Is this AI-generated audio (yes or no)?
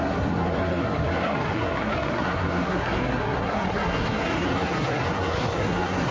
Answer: yes